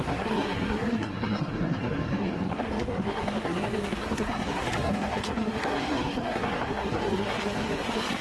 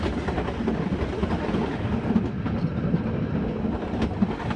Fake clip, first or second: first